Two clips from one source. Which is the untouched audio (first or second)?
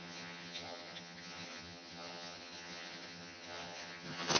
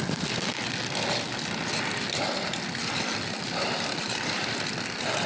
second